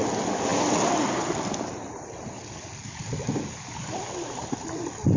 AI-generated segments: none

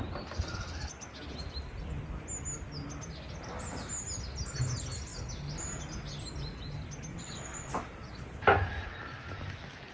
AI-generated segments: 7.1-7.7 (vocoder, WaveNeXt)

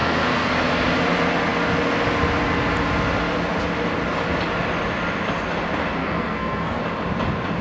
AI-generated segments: 0.0-0.5 (codec, SNAC); 6.0-6.8

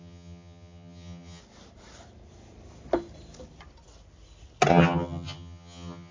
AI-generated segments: 0.0-1.4 (vocoder, HiFi-GAN); 4.7-6.1

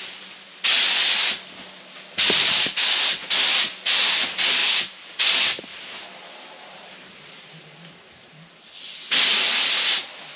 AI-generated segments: none